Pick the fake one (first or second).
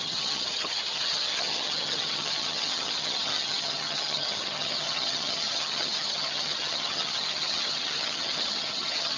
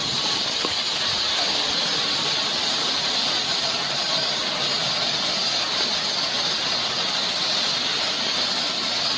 first